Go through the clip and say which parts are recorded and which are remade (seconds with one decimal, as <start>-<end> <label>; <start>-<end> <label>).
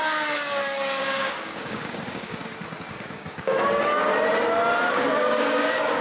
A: 0.0-1.0 recorded; 1.0-2.4 remade; 2.4-2.9 recorded; 2.9-4.1 remade; 4.1-4.9 recorded; 4.9-6.0 remade